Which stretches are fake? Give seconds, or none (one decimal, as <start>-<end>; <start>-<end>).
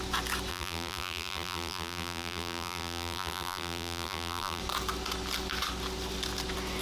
0.5-4.6